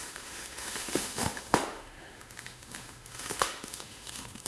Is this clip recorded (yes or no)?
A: no